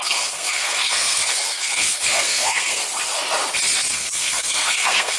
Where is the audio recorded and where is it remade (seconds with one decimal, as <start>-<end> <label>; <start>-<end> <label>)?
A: 0.0-2.8 remade; 2.8-3.8 recorded; 3.8-5.2 remade